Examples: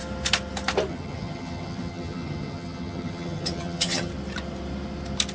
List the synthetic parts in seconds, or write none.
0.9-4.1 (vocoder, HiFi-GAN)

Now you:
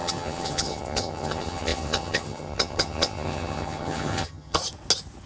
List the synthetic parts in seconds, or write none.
0.0-4.6 (vocoder, HiFi-GAN)

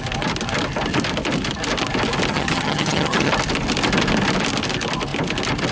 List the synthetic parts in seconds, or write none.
2.3-3.3 (vocoder, HiFi-GAN)